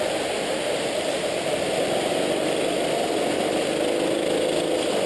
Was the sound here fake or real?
real